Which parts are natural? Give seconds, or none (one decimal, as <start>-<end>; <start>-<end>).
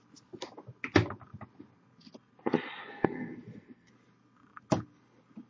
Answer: 0.0-2.8; 3.9-5.5